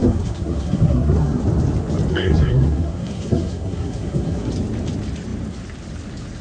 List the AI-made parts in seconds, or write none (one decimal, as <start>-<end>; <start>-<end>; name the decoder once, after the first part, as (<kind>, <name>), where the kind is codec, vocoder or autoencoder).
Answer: 0.0-1.4 (codec, SNAC); 2.1-4.5